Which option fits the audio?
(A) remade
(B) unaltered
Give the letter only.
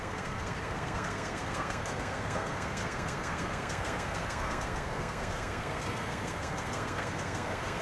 A